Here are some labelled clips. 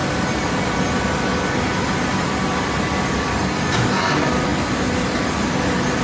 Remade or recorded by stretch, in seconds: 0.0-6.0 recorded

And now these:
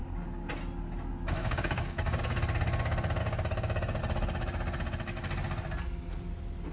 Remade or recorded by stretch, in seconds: 0.0-1.4 recorded; 1.4-2.2 remade; 2.2-3.2 recorded; 3.2-4.0 remade; 4.0-6.7 recorded

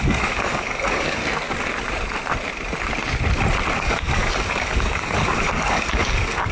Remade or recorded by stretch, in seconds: 0.0-1.2 remade; 1.2-3.8 recorded; 3.8-6.5 remade

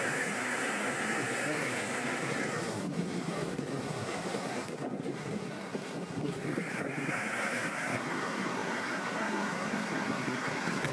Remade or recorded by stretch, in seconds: 0.0-10.9 remade

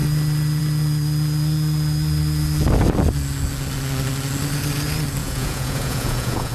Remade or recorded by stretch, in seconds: 0.0-5.2 recorded; 5.2-6.5 remade